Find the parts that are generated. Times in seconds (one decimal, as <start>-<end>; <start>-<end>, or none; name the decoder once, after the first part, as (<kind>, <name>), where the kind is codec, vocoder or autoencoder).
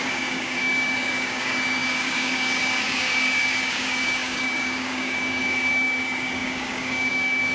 0.0-7.5 (codec, DAC)